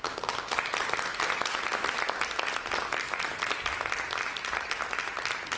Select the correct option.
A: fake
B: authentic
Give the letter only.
B